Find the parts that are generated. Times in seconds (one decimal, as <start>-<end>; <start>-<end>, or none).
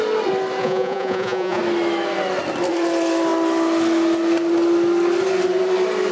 0.6-1.6